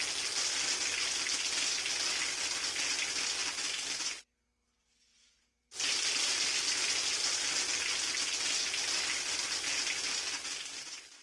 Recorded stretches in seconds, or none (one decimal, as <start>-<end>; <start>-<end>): 0.0-3.4; 4.2-11.2